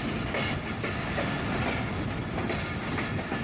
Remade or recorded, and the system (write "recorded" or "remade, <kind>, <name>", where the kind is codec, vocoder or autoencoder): recorded